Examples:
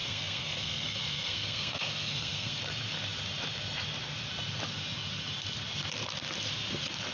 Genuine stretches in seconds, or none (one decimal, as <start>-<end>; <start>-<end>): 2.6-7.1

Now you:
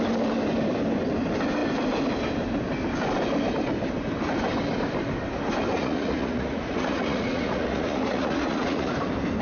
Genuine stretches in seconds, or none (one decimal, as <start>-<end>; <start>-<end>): 0.0-5.7; 8.9-9.4

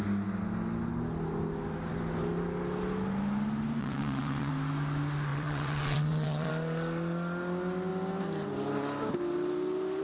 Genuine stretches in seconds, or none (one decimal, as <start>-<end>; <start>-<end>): 0.0-3.8; 4.5-5.3; 6.5-10.0